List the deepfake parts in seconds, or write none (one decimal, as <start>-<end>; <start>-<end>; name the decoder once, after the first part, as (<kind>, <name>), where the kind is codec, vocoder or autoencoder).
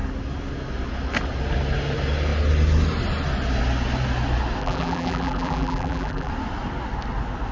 4.6-6.3 (vocoder, BigVGAN v2)